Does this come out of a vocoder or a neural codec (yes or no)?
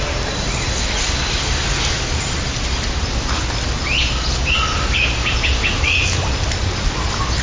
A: no